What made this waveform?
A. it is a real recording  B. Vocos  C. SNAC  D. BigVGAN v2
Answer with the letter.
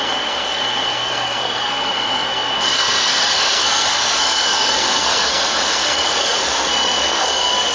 C